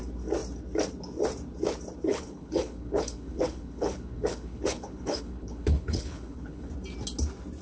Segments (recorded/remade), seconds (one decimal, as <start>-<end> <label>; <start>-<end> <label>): 0.0-2.1 recorded; 2.1-6.7 remade; 6.7-7.6 recorded